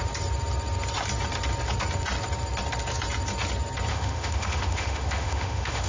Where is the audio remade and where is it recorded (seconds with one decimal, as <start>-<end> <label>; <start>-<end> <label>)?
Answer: 0.0-3.9 recorded; 3.9-5.9 remade